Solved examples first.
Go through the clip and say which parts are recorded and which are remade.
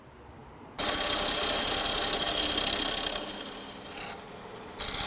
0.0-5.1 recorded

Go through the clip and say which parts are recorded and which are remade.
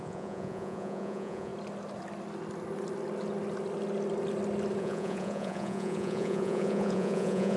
0.0-1.5 remade; 1.5-4.8 recorded; 4.8-7.6 remade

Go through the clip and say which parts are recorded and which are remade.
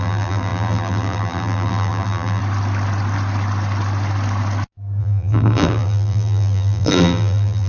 0.0-2.4 remade; 2.4-5.0 recorded; 5.0-7.7 remade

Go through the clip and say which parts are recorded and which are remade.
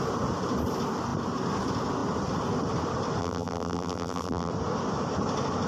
0.0-3.2 recorded; 3.2-4.5 remade; 4.5-5.7 recorded